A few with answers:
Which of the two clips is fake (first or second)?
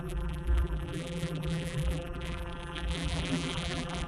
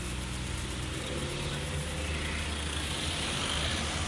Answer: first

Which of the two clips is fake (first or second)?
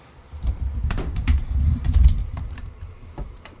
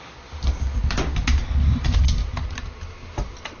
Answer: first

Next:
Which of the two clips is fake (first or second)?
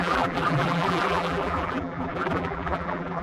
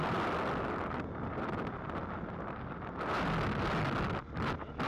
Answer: first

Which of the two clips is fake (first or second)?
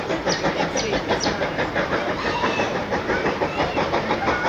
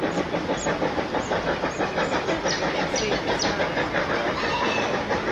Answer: first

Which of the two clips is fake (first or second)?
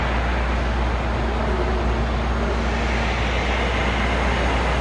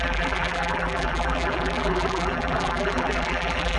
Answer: second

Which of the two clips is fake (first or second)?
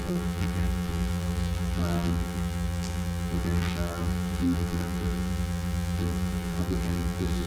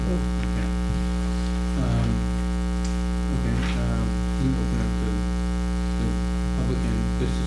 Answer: first